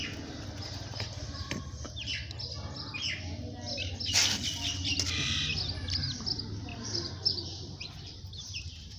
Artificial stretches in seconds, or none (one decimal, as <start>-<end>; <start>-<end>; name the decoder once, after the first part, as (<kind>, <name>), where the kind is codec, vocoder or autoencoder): 6.7-9.0 (vocoder, BigVGAN v2)